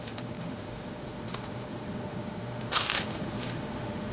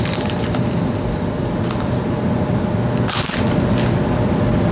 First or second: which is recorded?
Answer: second